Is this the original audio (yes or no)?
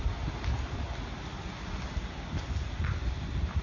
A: yes